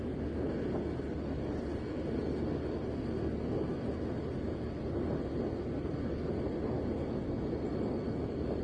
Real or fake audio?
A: real